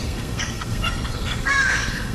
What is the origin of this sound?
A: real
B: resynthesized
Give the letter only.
B